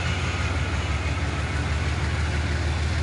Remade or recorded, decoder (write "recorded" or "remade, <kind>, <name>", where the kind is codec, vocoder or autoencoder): recorded